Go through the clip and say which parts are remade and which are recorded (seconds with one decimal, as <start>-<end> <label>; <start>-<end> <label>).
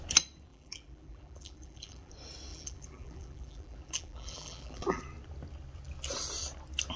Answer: 0.0-0.5 recorded; 0.5-2.1 remade; 2.1-2.5 recorded; 2.5-5.0 remade; 5.0-7.0 recorded